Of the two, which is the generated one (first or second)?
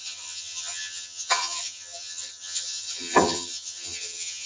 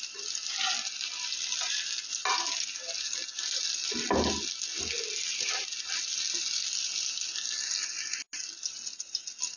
first